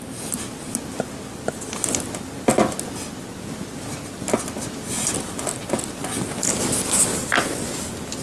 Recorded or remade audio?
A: recorded